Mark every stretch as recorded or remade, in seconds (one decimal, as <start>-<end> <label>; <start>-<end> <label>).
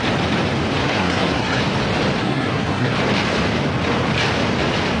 0.0-0.8 recorded; 0.8-1.6 remade; 1.6-2.2 recorded; 2.2-2.9 remade; 2.9-5.0 recorded